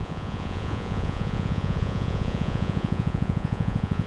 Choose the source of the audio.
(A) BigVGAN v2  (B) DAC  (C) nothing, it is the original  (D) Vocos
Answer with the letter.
D